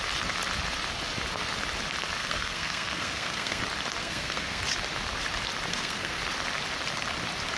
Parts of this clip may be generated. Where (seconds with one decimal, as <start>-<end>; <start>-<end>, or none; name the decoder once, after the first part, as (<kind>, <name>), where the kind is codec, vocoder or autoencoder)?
2.2-3.6 (codec, SNAC); 4.0-4.6; 5.7-6.2